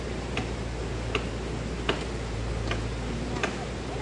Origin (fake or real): real